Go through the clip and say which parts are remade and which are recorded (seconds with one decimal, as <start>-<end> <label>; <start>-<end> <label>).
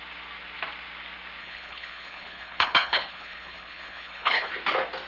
0.0-1.4 recorded; 1.4-4.5 remade; 4.5-5.1 recorded